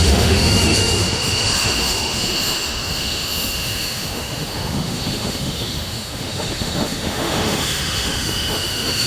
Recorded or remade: remade